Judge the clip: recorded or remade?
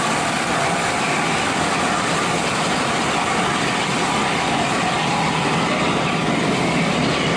recorded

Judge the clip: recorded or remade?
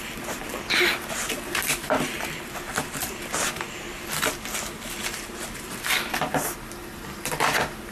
remade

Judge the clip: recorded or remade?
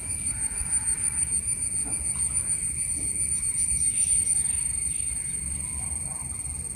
remade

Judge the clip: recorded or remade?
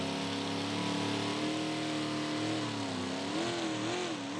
recorded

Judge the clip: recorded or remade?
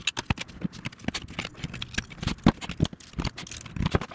recorded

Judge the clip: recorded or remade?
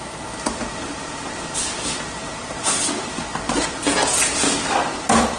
recorded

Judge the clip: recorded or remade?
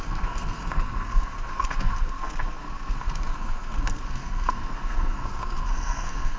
remade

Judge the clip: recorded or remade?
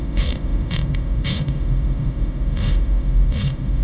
remade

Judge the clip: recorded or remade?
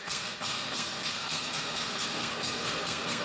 remade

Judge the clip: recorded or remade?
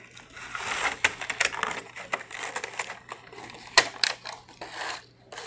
recorded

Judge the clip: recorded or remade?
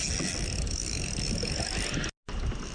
recorded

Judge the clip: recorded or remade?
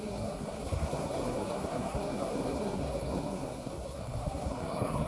remade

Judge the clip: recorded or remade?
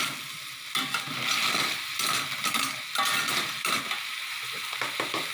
recorded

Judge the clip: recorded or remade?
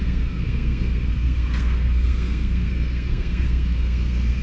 remade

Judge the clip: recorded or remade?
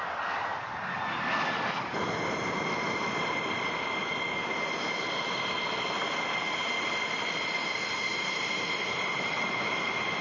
recorded